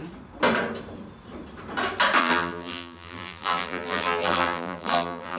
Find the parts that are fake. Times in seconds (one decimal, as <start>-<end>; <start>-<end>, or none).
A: 2.2-5.4